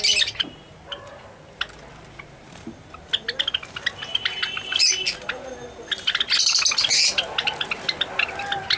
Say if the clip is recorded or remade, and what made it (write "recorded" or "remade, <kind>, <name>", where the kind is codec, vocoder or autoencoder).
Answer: recorded